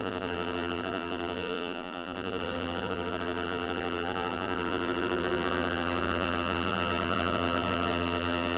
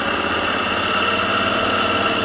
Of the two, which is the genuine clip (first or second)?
second